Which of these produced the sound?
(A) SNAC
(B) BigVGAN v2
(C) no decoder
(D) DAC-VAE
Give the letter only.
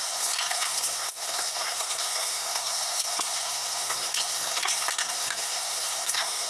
A